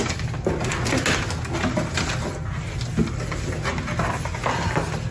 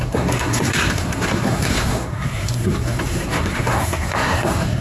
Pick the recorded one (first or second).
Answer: first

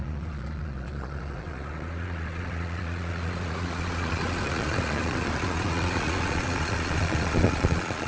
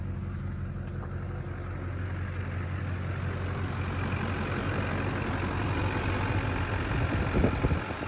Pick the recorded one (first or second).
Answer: second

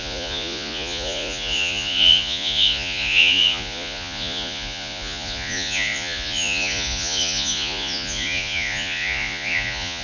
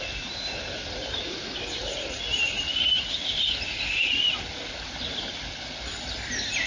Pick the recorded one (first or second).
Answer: second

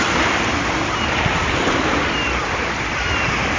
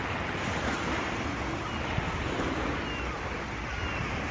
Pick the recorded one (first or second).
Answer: second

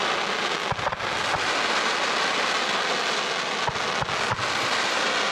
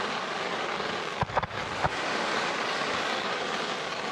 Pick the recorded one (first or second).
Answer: first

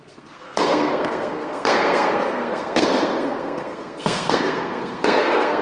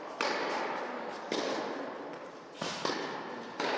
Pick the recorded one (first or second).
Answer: second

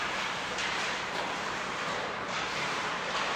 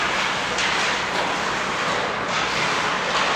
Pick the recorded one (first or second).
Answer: second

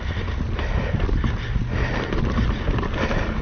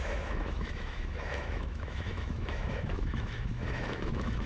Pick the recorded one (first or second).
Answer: first